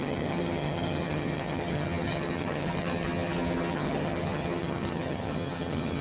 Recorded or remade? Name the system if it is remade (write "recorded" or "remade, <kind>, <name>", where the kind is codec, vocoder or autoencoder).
remade, vocoder, HiFi-GAN